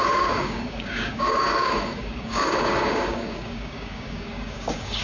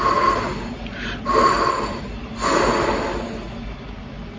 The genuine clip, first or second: second